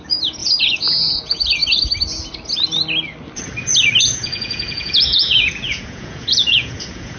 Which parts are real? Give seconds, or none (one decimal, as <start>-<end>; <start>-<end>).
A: 1.6-4.0